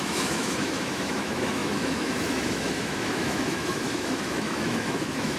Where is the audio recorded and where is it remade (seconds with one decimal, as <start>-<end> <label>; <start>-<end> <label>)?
0.0-5.4 remade